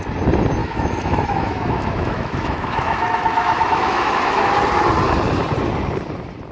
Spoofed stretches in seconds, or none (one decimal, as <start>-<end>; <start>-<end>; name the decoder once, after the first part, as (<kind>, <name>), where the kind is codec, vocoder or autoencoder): 0.6-4.5 (autoencoder, DAC-VAE)